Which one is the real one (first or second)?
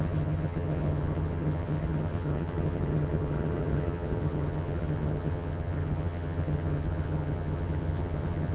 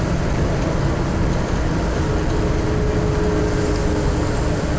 second